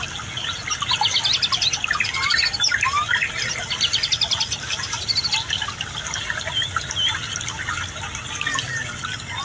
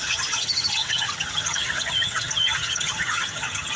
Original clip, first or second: first